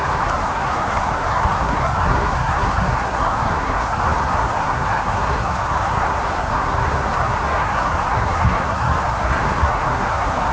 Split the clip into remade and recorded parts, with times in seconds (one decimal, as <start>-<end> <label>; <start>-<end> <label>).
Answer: 0.0-10.5 remade